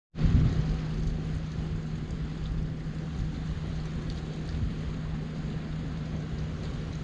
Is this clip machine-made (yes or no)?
no